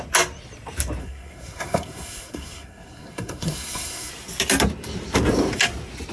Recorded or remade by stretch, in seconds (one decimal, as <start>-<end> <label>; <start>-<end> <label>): 0.0-1.0 recorded; 1.0-4.1 remade; 4.1-6.1 recorded